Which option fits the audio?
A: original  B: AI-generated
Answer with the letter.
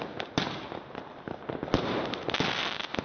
A